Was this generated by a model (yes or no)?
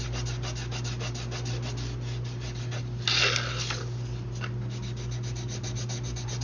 no